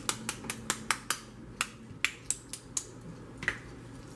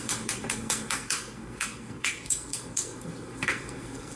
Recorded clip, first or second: first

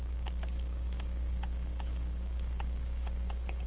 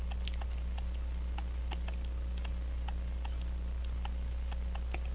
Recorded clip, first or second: second